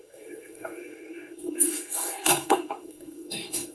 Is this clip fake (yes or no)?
yes